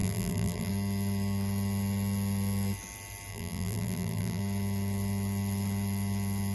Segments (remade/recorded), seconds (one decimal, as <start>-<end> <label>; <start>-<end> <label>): 0.0-0.7 remade; 0.7-3.3 recorded; 3.3-4.4 remade; 4.4-6.5 recorded